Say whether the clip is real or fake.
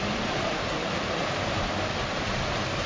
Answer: real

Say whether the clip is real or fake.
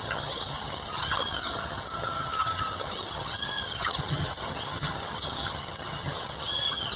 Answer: fake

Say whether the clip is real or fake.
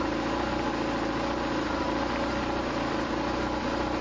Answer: real